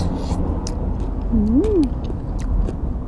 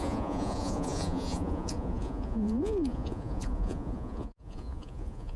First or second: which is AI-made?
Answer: second